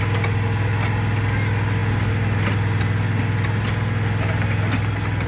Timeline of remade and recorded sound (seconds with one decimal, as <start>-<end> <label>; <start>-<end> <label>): 0.0-5.3 recorded